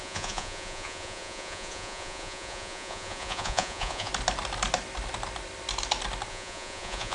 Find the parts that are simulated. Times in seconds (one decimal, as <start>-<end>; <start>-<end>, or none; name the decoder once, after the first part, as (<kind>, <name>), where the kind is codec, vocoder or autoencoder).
0.0-4.1 (vocoder, Vocos); 6.3-7.1